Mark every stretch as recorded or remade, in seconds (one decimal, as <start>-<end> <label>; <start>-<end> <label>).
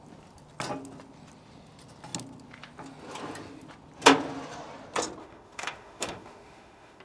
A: 0.0-5.2 recorded; 5.2-7.0 remade